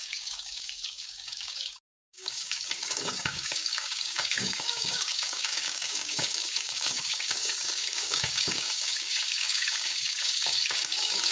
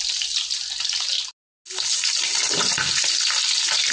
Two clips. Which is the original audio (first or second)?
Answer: second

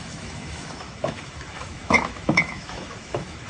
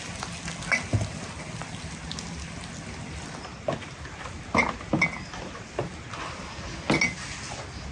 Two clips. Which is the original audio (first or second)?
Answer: second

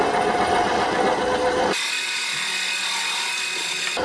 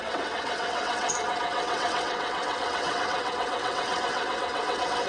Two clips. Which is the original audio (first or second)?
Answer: first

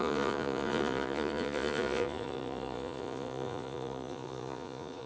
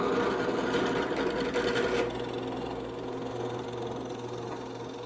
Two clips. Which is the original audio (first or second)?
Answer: second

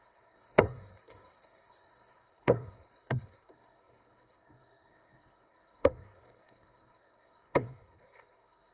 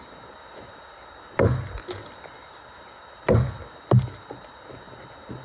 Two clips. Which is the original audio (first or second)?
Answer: second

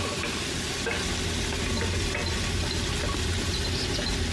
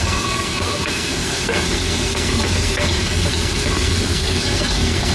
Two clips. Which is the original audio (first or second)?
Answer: first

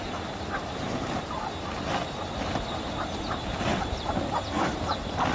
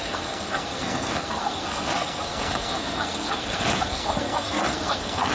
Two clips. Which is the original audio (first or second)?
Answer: first